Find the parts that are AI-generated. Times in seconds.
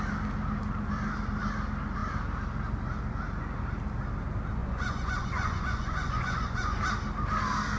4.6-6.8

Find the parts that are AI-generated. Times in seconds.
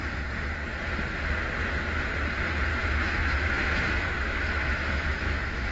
2.7-5.7